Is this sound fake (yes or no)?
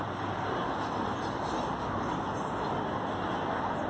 no